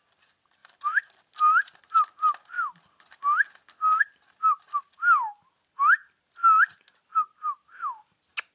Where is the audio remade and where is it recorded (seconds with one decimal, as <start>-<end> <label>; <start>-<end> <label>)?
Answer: 0.0-8.5 recorded